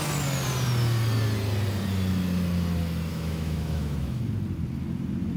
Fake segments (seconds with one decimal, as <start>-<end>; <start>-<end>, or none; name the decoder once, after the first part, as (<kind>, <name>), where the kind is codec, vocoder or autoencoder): 3.1-4.2 (autoencoder, DAC-VAE)